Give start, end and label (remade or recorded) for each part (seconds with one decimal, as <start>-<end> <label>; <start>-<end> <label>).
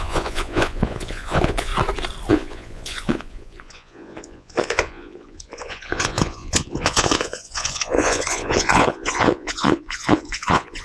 0.0-1.7 remade; 1.7-2.3 recorded; 2.3-10.8 remade